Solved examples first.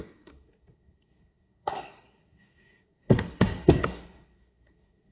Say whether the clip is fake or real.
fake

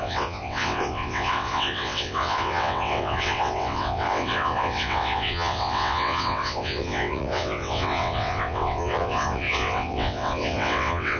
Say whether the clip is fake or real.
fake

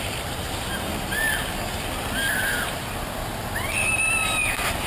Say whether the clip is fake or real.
fake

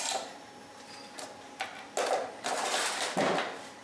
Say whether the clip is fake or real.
real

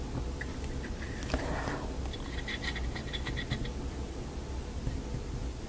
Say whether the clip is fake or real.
real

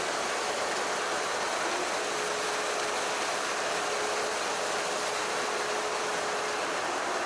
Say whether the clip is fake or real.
real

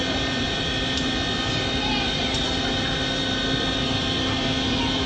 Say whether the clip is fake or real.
real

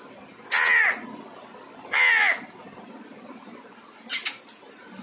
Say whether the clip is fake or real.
real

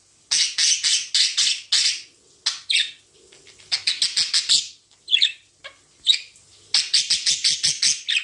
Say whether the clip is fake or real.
real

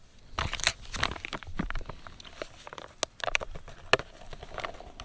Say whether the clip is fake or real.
real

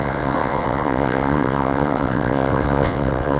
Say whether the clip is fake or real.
fake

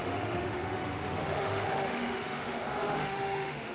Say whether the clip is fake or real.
fake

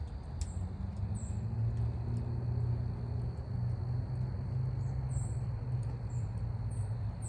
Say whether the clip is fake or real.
real